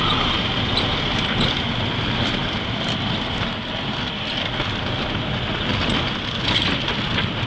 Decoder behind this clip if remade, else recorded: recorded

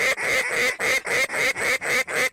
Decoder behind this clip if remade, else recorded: recorded